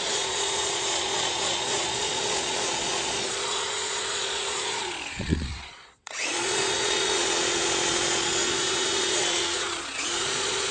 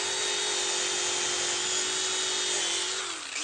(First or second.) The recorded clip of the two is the second